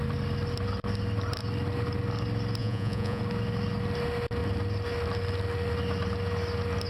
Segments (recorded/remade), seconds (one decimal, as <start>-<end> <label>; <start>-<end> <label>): 0.0-2.6 recorded; 2.6-3.2 remade; 3.2-6.9 recorded